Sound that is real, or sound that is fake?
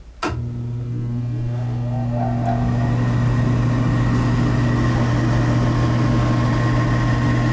real